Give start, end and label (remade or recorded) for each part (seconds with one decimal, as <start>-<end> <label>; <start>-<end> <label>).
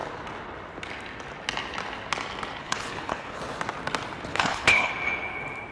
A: 0.0-2.6 recorded; 2.6-3.4 remade; 3.4-4.3 recorded; 4.3-4.9 remade; 4.9-5.7 recorded